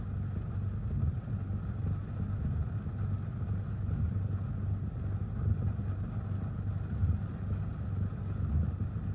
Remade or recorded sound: recorded